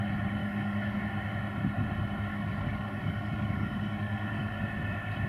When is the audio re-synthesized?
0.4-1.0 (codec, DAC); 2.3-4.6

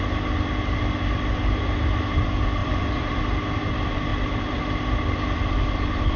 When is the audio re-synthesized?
2.6-3.2 (vocoder, BigVGAN v2); 4.1-4.6

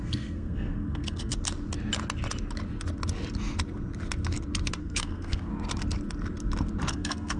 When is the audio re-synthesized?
0.0-1.3 (codec, SNAC); 4.8-5.5; 6.9-7.4